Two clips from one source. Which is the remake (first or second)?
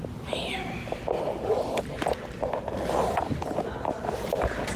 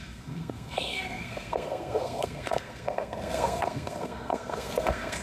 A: second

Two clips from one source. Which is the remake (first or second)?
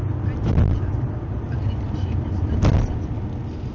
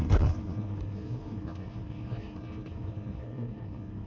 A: second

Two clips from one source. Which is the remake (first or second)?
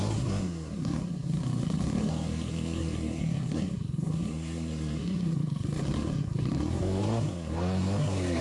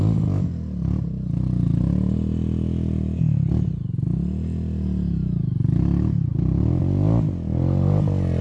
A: first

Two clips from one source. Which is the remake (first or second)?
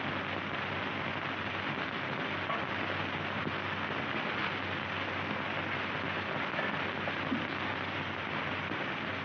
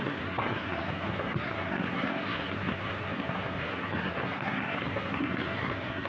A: second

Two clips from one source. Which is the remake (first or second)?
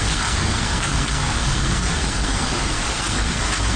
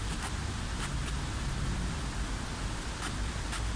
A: first